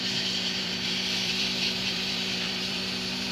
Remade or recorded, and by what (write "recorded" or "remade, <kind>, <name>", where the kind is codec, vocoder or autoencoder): remade, vocoder, BigVGAN v2